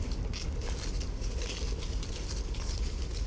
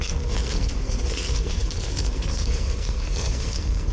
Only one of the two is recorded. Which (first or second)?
first